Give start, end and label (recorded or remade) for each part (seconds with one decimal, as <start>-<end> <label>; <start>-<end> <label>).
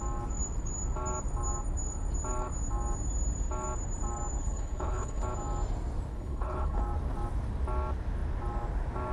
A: 0.0-4.4 recorded; 4.4-5.2 remade; 5.2-6.1 recorded; 6.1-6.8 remade; 6.8-9.1 recorded